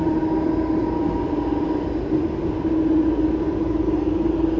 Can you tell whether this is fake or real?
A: real